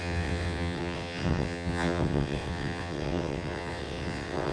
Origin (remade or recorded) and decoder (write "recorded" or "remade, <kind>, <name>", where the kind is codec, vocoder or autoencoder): remade, vocoder, WaveNeXt